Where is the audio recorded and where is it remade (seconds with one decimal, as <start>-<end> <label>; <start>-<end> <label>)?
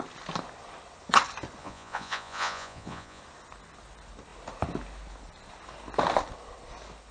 0.0-1.6 recorded; 1.6-3.2 remade; 3.2-7.1 recorded